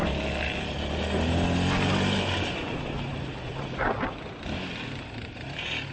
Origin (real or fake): real